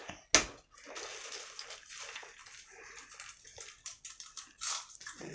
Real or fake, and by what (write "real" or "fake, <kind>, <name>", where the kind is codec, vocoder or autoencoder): real